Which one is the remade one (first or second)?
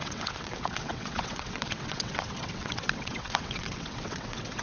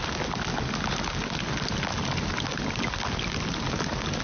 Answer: first